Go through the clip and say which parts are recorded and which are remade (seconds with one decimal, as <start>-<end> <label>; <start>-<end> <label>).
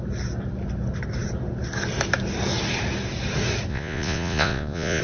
0.0-3.7 recorded; 3.7-5.0 remade